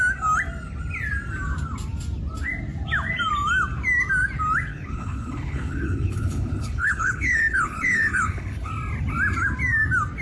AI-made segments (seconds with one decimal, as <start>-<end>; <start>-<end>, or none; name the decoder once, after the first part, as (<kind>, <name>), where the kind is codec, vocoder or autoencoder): 4.7-8.7 (codec, HILCodec)